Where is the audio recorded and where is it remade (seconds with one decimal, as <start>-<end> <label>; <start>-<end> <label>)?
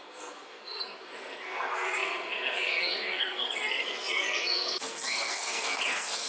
0.0-6.3 remade